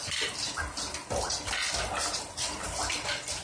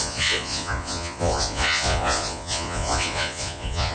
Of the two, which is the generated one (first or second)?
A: second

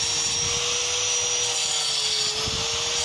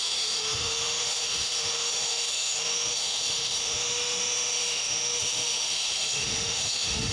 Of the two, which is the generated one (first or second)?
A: second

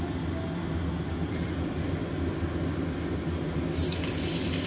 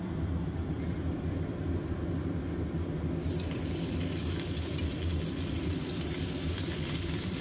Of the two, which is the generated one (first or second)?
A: second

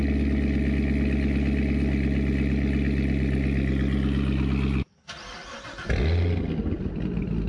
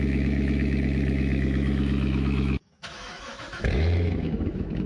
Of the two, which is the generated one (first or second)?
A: second